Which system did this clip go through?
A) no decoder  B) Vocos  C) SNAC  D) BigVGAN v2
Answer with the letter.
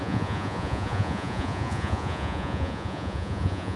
B